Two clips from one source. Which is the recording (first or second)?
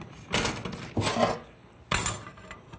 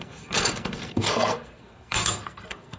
first